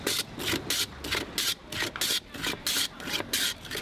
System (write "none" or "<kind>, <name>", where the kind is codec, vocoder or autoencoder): none